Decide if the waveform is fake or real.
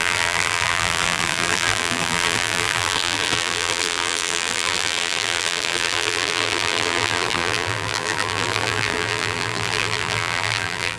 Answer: fake